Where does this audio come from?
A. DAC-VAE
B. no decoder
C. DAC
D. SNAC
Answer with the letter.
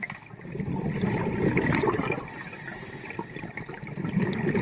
B